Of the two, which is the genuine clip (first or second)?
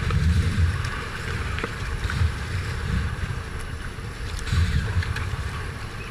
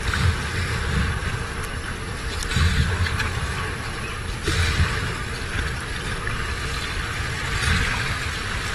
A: second